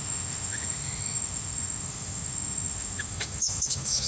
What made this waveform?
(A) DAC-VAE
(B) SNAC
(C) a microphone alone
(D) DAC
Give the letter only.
A